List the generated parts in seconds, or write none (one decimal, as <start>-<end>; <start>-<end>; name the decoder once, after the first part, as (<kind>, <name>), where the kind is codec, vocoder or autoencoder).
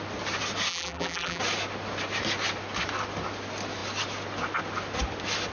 0.7-1.4 (vocoder, BigVGAN v2)